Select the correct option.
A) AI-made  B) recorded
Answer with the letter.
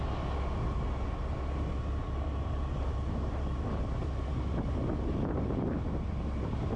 B